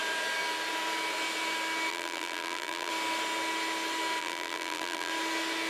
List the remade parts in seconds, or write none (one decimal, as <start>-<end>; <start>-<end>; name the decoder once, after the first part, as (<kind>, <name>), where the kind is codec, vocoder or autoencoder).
1.9-2.9 (vocoder, BigVGAN v2); 4.2-5.1